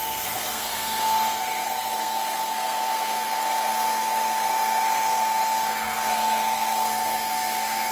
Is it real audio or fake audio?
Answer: fake